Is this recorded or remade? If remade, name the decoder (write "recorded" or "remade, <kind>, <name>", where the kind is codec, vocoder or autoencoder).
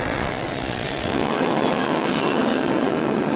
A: remade, vocoder, WaveNeXt